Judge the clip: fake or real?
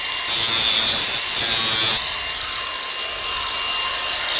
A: real